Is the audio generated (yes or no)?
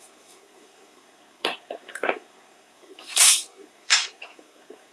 yes